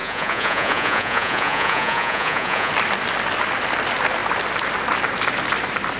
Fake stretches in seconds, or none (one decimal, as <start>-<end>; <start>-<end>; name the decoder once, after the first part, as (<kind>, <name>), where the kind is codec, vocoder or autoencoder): 0.0-2.7 (vocoder, Vocos)